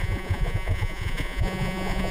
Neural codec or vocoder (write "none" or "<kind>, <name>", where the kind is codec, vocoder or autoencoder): vocoder, Vocos